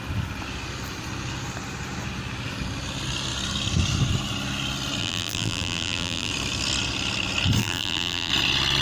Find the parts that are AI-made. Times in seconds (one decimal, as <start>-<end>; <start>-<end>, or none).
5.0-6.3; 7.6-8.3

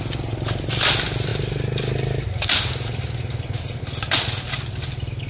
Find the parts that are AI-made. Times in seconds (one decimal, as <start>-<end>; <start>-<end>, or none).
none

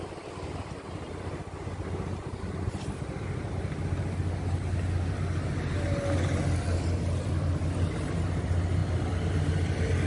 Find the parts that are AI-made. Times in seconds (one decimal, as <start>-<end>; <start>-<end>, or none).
none

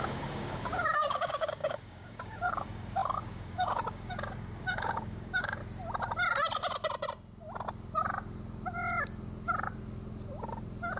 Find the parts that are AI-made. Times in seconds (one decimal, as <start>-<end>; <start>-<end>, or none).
0.0-5.6

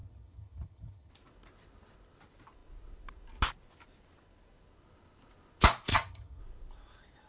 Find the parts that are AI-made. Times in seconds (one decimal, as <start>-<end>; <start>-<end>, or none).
0.0-1.1; 5.9-6.4

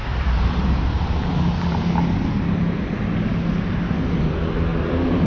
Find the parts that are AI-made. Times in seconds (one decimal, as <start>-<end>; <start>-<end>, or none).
0.0-1.5; 4.7-5.3

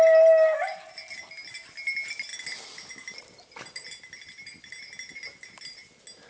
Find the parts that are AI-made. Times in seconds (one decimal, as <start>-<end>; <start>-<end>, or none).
none

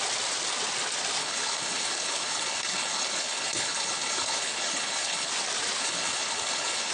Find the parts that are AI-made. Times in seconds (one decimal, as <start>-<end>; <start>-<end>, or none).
1.2-5.3; 5.8-6.9